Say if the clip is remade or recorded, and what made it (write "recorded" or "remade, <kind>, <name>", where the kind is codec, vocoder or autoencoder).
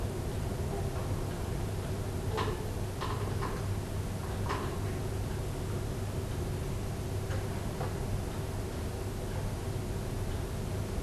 recorded